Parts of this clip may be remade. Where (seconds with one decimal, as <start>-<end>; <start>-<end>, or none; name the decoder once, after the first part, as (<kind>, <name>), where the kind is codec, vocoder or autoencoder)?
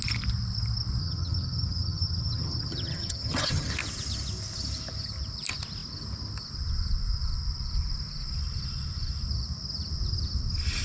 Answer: 1.0-3.7 (vocoder, HiFi-GAN)